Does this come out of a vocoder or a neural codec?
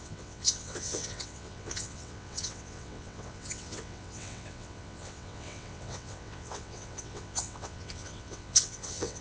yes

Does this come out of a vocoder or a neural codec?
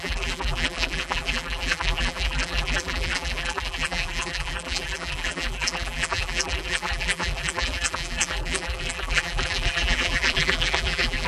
yes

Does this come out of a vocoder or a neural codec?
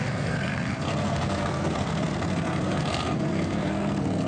yes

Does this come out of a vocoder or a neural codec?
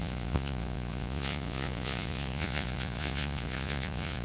yes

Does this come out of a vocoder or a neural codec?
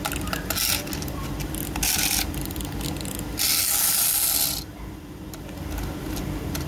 no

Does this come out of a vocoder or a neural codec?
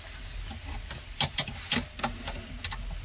no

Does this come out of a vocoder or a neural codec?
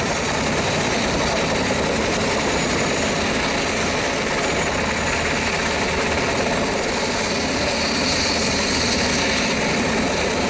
no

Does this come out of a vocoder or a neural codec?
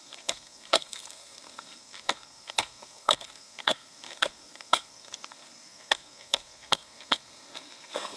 yes